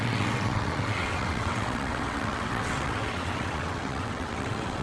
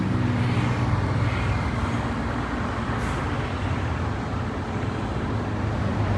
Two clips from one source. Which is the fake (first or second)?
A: first